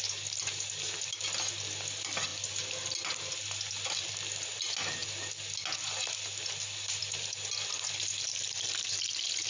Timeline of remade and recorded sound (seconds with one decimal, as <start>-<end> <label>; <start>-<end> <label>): 0.0-9.5 recorded